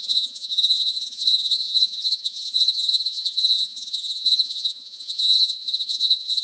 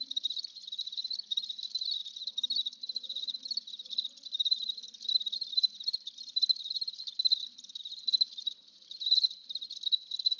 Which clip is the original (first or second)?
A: second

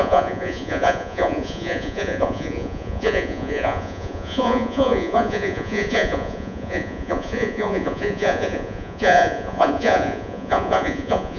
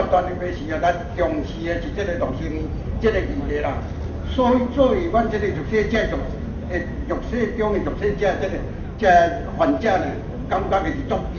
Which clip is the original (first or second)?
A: second